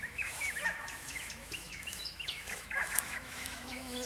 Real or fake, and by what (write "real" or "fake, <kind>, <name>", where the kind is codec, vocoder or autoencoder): fake, autoencoder, DAC-VAE